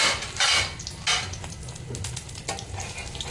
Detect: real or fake real